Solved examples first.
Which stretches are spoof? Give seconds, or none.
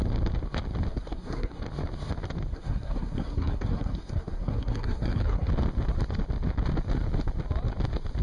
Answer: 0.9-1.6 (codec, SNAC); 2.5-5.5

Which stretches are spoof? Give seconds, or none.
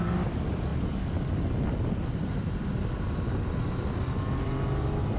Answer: none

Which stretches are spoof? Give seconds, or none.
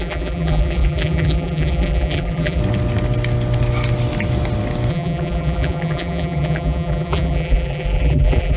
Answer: 0.0-2.6 (vocoder, BigVGAN v2); 4.9-8.6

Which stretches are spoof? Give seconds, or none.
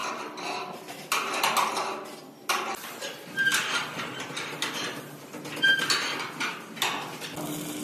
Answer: 0.0-1.0 (vocoder, BigVGAN v2)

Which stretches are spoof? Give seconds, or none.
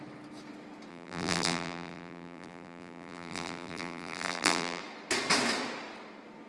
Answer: 0.9-4.8 (vocoder, BigVGAN v2)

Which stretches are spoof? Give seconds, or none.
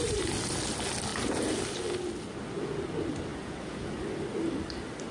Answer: 3.3-3.9 (vocoder, Vocos)